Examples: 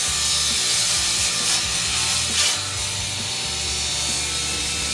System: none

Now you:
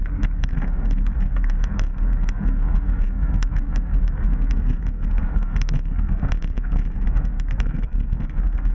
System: codec, SNAC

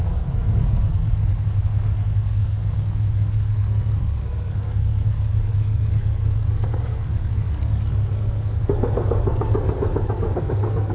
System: codec, SNAC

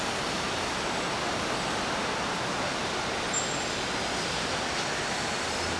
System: none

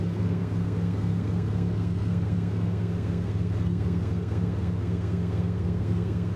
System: codec, SNAC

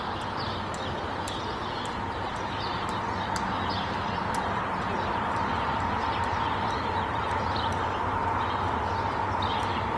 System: none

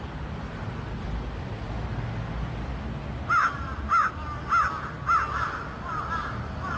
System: none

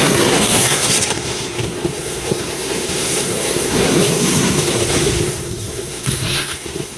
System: codec, SNAC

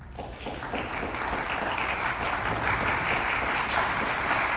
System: none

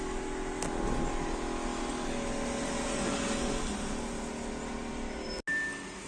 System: none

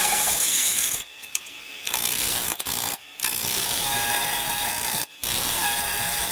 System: codec, SNAC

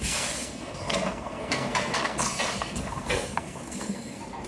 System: codec, SNAC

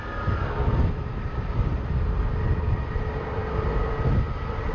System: none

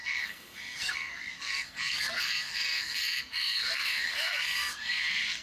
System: codec, SNAC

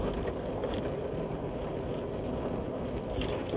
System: none